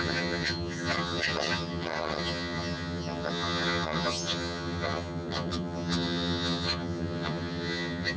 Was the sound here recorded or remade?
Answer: remade